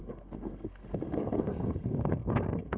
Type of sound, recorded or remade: remade